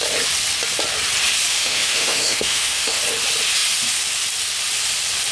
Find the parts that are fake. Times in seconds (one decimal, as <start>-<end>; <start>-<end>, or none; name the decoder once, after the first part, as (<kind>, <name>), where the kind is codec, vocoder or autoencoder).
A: 1.5-3.0 (autoencoder, DAC-VAE)

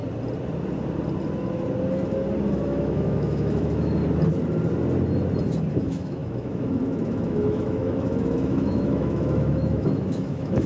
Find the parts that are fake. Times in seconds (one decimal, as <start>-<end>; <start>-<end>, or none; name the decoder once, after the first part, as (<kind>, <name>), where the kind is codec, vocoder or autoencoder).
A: 2.5-4.0 (autoencoder, DAC-VAE); 5.7-10.7

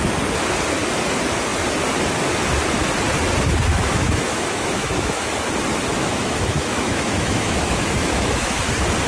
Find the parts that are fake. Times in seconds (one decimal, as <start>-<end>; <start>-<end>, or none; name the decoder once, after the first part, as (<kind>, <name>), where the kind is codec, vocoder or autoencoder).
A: 3.7-5.3 (autoencoder, DAC-VAE); 6.0-8.6

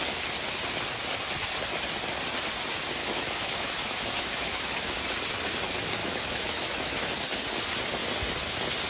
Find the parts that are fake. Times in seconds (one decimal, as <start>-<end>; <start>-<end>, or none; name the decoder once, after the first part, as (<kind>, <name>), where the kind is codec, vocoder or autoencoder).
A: 3.0-5.0 (autoencoder, DAC-VAE); 6.0-7.1

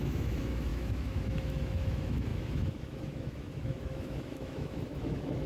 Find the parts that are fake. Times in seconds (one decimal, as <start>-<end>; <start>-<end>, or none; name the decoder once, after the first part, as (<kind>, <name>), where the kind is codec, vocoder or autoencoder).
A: 0.0-5.5 (autoencoder, DAC-VAE)

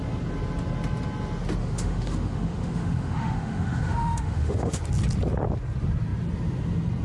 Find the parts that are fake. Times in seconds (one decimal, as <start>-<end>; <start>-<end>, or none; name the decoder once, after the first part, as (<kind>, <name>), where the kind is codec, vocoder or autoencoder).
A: 1.6-4.8 (autoencoder, DAC-VAE)